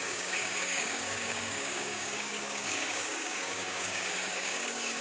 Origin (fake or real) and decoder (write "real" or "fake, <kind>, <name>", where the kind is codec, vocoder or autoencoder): fake, codec, DAC